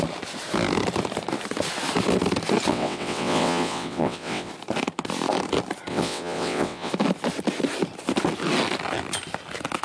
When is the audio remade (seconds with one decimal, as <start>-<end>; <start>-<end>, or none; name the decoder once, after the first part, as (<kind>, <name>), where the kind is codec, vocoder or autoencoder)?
2.7-4.5 (vocoder, WaveNeXt); 5.9-6.9